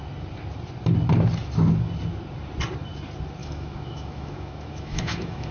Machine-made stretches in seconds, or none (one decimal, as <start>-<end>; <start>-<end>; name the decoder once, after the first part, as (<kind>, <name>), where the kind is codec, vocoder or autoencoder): 3.4-5.5 (autoencoder, DAC-VAE)